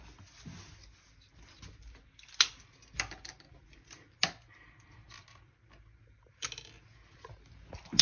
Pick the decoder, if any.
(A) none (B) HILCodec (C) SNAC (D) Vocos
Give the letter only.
A